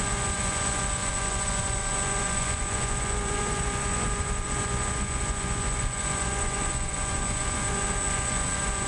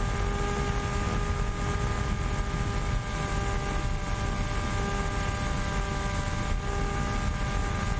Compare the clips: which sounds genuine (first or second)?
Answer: second